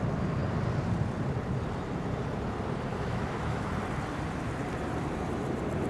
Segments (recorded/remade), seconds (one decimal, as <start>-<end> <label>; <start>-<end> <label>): 0.0-2.9 recorded; 2.9-3.7 remade; 3.7-5.9 recorded